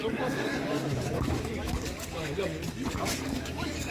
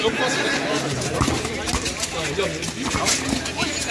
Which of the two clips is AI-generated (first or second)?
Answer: first